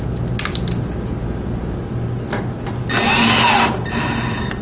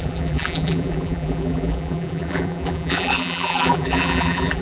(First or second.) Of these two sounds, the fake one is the second